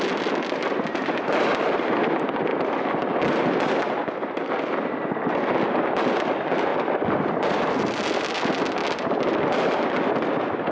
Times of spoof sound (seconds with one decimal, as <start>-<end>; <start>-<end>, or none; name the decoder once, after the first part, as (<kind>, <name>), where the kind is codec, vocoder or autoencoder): 6.7-7.7 (vocoder, BigVGAN v2)